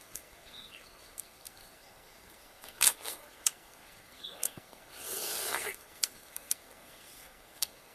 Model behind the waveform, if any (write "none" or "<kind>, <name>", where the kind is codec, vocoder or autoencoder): codec, SNAC